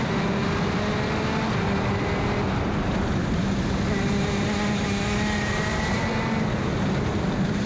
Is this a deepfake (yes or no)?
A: no